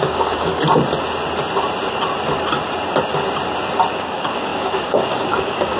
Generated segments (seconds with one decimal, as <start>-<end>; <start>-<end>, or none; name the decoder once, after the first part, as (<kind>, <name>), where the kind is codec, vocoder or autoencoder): 0.0-0.5 (codec, DAC); 3.9-5.8